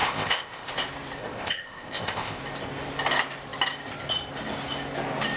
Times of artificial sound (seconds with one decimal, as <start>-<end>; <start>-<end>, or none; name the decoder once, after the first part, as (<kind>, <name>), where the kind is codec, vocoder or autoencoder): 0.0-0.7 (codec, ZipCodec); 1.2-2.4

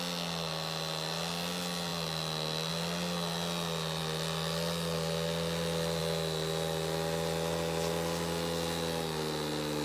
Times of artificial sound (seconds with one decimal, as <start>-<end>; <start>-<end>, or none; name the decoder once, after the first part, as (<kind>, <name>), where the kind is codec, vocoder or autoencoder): none

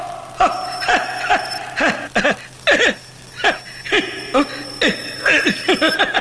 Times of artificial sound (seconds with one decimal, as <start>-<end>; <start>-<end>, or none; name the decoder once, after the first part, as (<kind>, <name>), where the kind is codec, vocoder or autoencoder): none